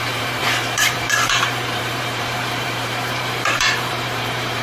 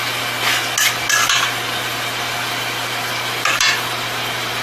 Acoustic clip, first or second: second